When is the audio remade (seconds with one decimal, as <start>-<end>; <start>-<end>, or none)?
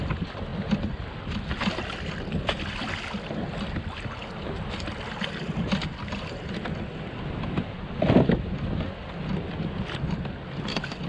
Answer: none